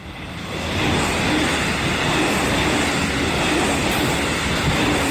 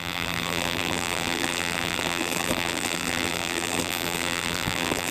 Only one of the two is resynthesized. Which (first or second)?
second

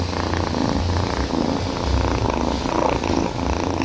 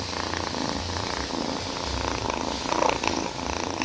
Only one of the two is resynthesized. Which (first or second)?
second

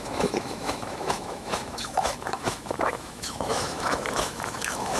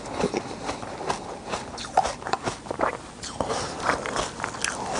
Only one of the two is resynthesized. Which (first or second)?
first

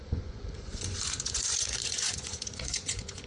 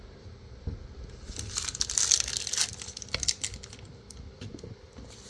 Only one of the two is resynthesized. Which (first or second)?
first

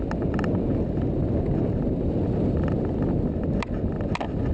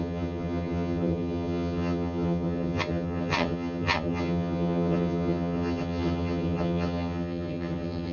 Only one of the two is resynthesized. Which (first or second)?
second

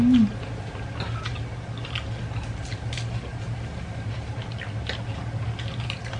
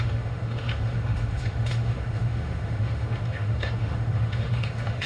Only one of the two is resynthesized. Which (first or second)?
second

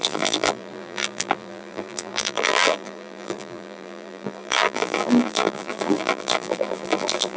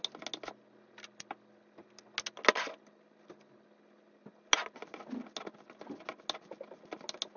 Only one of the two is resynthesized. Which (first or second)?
first